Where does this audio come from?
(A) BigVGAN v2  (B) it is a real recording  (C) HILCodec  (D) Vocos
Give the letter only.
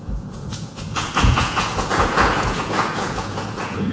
D